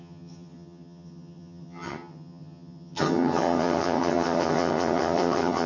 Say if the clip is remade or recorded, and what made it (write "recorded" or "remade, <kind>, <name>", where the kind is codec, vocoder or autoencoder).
remade, vocoder, HiFi-GAN